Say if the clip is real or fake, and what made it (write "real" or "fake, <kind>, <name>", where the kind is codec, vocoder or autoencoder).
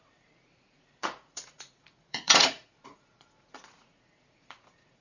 fake, vocoder, Vocos